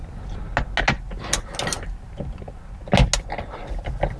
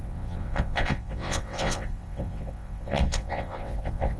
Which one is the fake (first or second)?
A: second